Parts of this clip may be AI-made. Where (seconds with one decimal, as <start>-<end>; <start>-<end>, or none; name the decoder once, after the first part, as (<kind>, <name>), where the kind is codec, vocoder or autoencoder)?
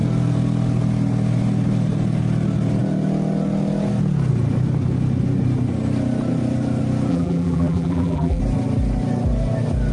7.1-8.4 (vocoder, BigVGAN v2)